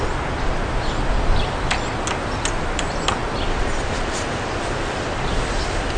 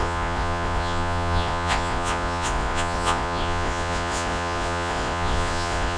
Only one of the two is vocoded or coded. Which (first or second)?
second